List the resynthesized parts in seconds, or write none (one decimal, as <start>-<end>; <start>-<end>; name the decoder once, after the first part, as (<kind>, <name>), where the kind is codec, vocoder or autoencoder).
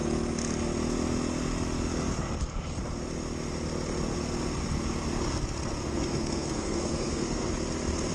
5.8-7.5 (codec, SNAC)